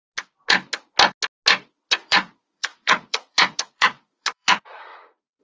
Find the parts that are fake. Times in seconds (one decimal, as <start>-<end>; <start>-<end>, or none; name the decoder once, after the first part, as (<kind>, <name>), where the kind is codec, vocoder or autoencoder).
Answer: 1.9-5.4 (vocoder, Vocos)